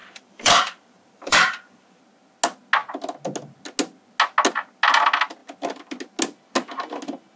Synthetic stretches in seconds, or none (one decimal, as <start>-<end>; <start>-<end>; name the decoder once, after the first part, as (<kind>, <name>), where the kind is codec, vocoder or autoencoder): 0.0-2.0 (vocoder, BigVGAN v2)

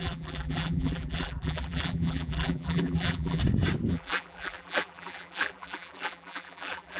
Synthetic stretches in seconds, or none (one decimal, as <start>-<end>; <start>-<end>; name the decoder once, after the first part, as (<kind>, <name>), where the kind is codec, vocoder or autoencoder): 0.0-3.4 (vocoder, BigVGAN v2); 3.9-7.0

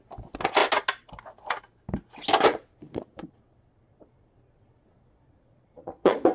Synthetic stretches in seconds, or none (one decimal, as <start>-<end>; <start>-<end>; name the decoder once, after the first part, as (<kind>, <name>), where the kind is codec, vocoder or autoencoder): 2.5-6.3 (vocoder, Vocos)